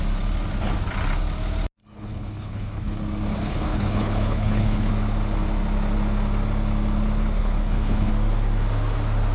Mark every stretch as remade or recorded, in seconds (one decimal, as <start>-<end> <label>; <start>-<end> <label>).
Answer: 0.0-1.8 recorded; 1.8-3.0 remade; 3.0-3.4 recorded; 3.4-4.9 remade; 4.9-7.4 recorded; 7.4-8.1 remade; 8.1-9.3 recorded